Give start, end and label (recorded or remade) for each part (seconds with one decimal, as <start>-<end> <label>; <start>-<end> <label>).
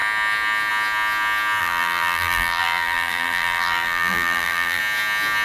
0.0-1.6 recorded; 1.6-4.8 remade; 4.8-5.4 recorded